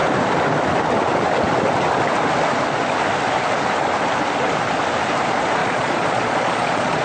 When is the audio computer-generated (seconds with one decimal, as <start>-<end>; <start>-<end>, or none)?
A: 5.6-7.0